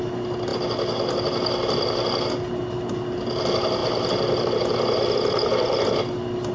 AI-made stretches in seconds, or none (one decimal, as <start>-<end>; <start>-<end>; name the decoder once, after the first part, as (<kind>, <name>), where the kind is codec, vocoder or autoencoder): none